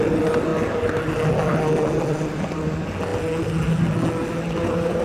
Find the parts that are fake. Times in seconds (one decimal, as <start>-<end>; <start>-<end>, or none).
none